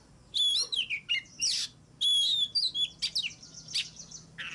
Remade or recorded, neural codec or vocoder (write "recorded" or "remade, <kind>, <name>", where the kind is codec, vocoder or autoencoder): recorded